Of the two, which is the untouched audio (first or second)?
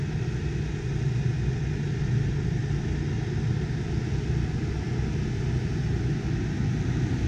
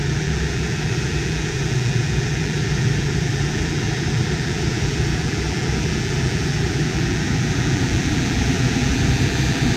first